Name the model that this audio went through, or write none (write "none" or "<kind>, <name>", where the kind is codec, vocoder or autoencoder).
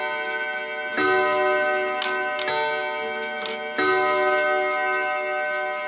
none